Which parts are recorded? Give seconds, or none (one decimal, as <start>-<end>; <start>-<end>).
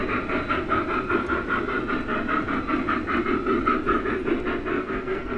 0.0-4.7